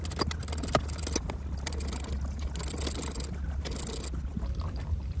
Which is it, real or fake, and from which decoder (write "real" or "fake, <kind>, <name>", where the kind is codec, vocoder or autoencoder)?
real